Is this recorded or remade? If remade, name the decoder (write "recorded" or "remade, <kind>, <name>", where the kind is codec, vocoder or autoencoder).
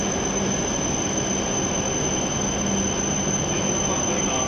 recorded